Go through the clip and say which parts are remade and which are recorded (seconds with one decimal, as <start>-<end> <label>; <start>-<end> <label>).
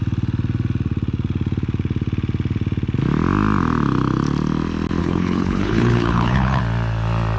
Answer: 0.0-5.0 recorded; 5.0-6.6 remade; 6.6-7.4 recorded